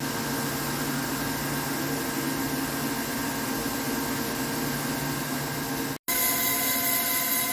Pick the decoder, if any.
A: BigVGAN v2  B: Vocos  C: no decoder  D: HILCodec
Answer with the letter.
C